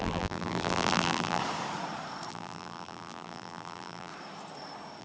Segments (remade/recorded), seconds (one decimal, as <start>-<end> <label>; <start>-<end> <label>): 0.0-1.4 remade; 1.4-2.3 recorded; 2.3-4.1 remade; 4.1-5.0 recorded